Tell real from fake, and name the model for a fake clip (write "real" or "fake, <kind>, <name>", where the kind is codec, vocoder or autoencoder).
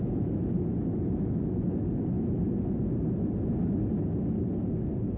real